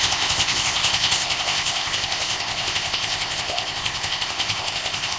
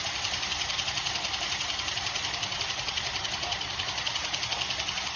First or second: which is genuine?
second